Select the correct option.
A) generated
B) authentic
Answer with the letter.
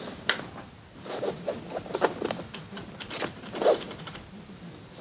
B